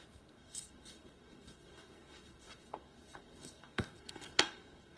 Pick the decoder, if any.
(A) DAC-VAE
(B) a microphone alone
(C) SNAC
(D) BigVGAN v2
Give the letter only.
C